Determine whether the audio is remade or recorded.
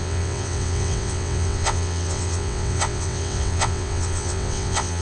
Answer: remade